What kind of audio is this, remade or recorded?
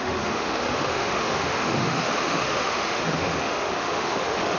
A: remade